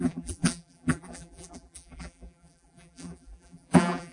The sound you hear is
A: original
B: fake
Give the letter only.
B